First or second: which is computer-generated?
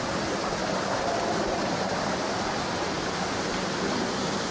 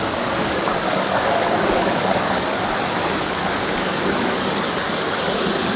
second